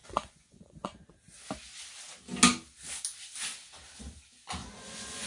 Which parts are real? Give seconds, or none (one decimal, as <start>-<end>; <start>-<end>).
1.1-4.6